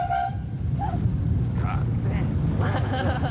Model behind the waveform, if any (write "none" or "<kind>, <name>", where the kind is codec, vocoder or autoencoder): none